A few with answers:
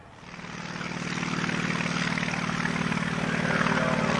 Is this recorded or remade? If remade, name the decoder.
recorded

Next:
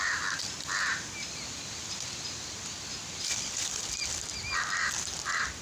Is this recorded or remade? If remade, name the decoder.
recorded